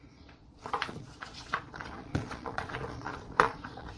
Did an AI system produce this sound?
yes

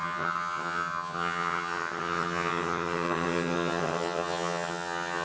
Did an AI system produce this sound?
yes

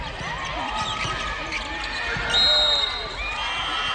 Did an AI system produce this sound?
no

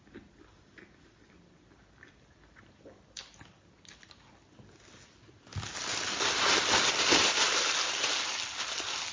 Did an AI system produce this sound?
no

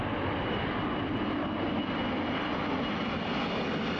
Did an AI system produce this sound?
no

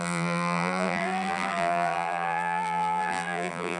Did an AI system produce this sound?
yes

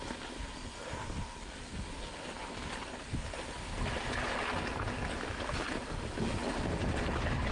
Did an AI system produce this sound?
no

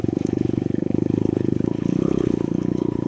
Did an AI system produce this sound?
yes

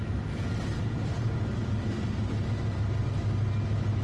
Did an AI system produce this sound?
no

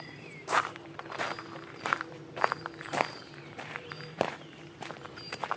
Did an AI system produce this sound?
yes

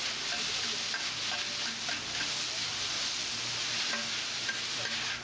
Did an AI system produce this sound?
no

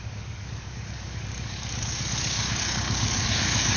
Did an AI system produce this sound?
yes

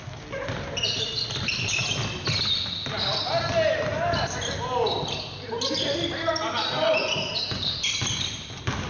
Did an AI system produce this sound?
no